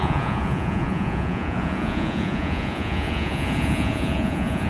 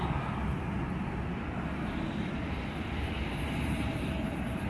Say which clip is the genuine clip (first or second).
second